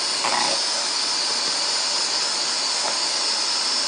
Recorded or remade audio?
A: recorded